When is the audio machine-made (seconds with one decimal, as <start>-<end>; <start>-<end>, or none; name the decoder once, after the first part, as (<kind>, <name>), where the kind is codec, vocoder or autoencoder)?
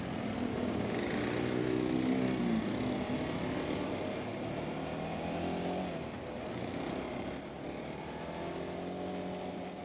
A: 0.5-1.1 (codec, DAC)